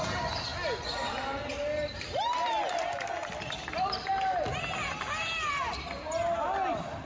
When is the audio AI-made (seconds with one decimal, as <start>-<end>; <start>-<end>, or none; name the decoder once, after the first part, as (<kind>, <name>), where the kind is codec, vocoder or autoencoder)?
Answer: none